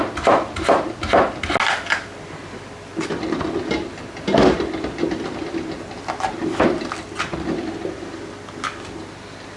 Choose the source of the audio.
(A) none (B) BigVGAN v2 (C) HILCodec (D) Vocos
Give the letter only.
A